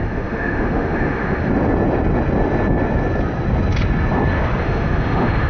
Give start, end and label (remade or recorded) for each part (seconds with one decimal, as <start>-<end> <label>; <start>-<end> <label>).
0.0-1.5 remade; 1.5-4.6 recorded; 4.6-5.5 remade